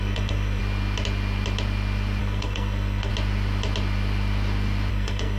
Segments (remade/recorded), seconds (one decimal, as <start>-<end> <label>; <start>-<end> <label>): 0.0-0.6 remade; 0.6-2.2 recorded; 2.2-3.1 remade; 3.1-4.9 recorded; 4.9-5.4 remade